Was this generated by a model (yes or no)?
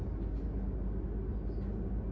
no